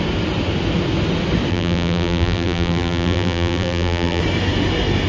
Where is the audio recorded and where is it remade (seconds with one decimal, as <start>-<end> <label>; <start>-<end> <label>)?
0.0-1.5 recorded; 1.5-4.2 remade; 4.2-5.1 recorded